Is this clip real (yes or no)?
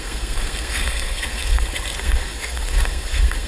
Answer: no